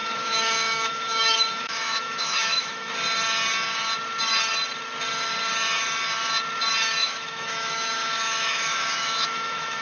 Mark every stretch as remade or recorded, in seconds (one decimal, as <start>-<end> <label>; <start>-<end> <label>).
0.0-2.9 remade; 2.9-7.0 recorded; 7.0-9.8 remade